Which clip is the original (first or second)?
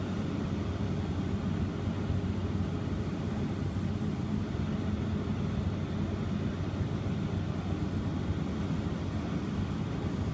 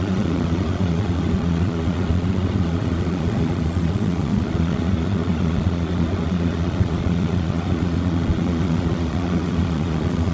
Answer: first